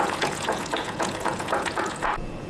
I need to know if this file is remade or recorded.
remade